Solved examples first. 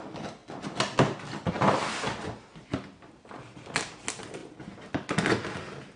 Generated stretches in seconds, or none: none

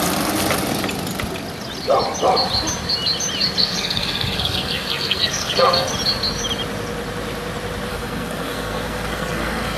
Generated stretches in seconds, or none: 3.6-5.9; 7.9-9.8

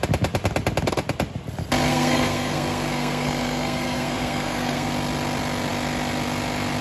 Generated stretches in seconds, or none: 1.9-4.9

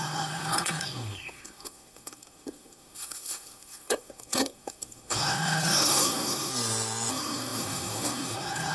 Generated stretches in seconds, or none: 0.0-6.5; 7.1-8.7

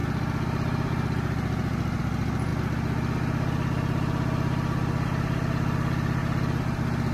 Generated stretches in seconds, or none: none

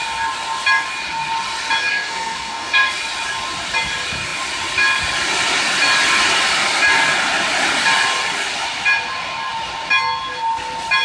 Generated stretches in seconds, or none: 1.9-2.9

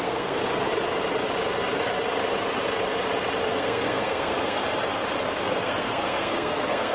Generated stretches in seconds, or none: 0.0-0.4; 3.5-4.6; 5.4-6.9